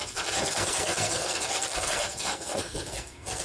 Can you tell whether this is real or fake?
fake